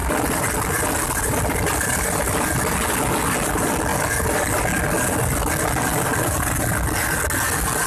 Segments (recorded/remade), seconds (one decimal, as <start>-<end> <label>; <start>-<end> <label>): 0.0-2.5 remade; 2.5-3.9 recorded; 3.9-4.6 remade; 4.6-6.1 recorded; 6.1-6.7 remade; 6.7-7.9 recorded